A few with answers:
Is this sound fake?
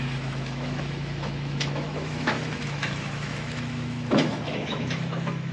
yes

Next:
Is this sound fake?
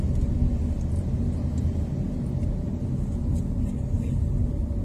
no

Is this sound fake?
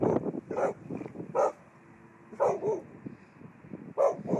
no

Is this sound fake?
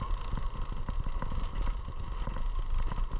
no